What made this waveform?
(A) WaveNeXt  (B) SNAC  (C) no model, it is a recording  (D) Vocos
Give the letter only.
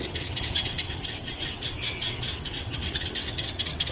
A